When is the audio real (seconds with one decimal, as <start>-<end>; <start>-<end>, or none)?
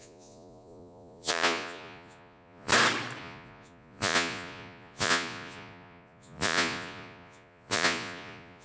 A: 2.7-3.2